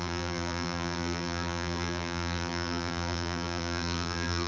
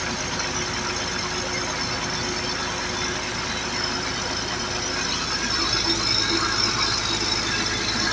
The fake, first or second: first